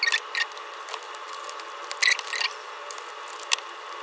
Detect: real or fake real